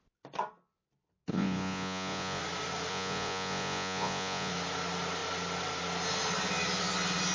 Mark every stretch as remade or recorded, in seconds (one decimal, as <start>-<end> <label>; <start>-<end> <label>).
0.0-1.3 recorded; 1.3-2.4 remade; 2.4-2.9 recorded; 2.9-4.5 remade; 4.5-7.3 recorded